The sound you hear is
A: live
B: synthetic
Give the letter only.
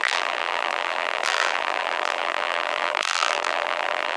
B